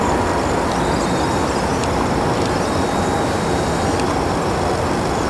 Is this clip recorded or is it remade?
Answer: recorded